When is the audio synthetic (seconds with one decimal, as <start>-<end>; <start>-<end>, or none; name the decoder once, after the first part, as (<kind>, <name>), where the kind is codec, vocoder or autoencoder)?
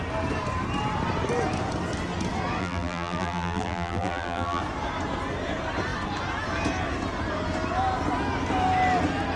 2.6-4.6 (vocoder, BigVGAN v2)